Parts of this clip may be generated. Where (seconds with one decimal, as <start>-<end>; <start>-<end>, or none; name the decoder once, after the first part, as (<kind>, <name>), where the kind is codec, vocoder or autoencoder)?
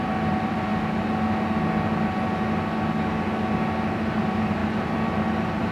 0.0-0.7 (vocoder, BigVGAN v2); 4.1-5.7